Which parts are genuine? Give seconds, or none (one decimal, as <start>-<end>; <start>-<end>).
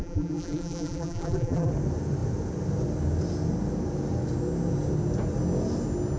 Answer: 1.7-6.2